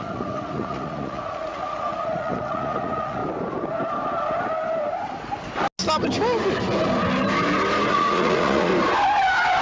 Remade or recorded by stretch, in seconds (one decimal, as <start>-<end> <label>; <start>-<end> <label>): 0.0-3.2 remade; 3.2-7.9 recorded; 7.9-8.7 remade; 8.7-9.6 recorded